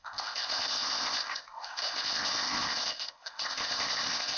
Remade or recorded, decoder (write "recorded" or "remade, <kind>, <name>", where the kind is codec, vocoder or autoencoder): remade, codec, ZipCodec